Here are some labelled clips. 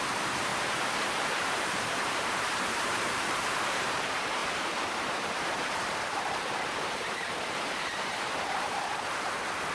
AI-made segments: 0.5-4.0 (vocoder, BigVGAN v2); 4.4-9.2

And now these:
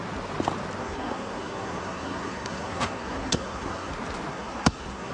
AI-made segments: 0.8-3.9 (codec, SNAC); 4.3-5.1